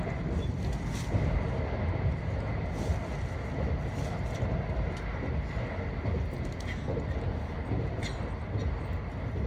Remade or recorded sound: recorded